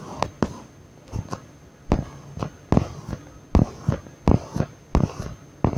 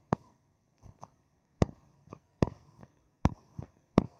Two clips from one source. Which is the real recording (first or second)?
first